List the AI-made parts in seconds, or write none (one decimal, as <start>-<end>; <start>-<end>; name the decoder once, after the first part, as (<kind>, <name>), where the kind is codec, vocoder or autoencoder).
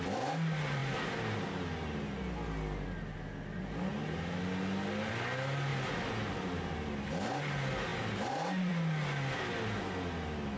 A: none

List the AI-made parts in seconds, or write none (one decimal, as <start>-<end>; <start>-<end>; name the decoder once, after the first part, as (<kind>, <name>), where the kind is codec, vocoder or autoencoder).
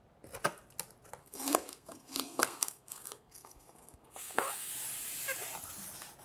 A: 1.2-4.7 (codec, SNAC)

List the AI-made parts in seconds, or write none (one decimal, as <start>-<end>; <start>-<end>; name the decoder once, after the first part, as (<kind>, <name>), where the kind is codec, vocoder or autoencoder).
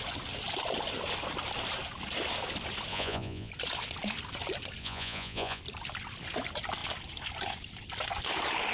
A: 2.9-3.5 (vocoder, Vocos); 4.8-5.6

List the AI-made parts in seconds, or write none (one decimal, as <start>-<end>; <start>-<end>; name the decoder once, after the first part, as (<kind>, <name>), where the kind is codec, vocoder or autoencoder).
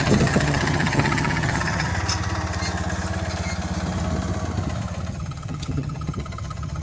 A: 0.0-1.9 (vocoder, HiFi-GAN); 5.1-6.8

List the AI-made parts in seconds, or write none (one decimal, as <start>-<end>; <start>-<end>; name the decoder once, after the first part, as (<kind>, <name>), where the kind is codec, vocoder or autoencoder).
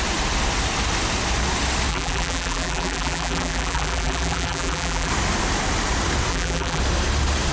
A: 1.9-5.1 (vocoder, BigVGAN v2); 6.3-6.8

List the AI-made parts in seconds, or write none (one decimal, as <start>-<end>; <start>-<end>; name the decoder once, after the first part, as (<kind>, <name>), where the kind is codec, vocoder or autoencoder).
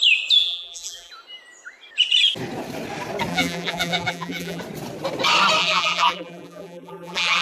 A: 0.4-1.1 (vocoder, BigVGAN v2); 3.3-4.6; 5.6-7.4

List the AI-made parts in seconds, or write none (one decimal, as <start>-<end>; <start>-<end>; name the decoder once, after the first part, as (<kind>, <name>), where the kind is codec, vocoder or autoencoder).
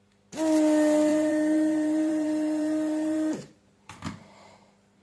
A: 1.1-4.1 (vocoder, BigVGAN v2)